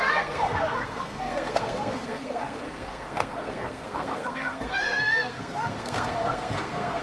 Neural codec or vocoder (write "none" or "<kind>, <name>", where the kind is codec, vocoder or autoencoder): codec, SNAC